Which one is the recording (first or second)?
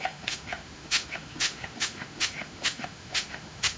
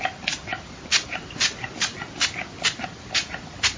second